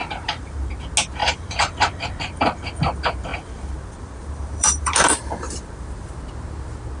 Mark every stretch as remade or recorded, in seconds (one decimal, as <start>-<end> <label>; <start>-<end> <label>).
0.0-0.7 remade; 0.7-1.2 recorded; 1.2-2.7 remade; 2.7-3.3 recorded; 3.3-6.1 remade; 6.1-7.0 recorded